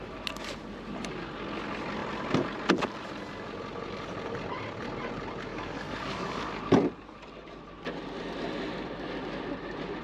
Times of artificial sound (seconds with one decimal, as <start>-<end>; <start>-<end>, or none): 5.5-6.6